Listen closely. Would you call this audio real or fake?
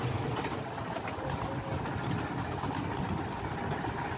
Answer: real